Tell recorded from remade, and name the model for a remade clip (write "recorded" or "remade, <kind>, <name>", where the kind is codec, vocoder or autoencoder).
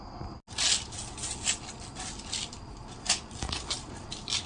recorded